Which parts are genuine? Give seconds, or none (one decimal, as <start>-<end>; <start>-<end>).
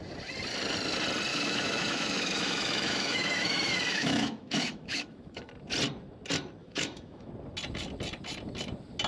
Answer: 0.0-1.3; 5.5-6.6; 7.3-9.1